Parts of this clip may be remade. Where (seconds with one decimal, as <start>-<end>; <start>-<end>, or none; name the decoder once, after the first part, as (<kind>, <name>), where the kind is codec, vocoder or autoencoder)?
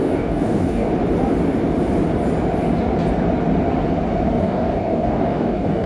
0.0-0.9 (codec, DAC); 4.4-5.9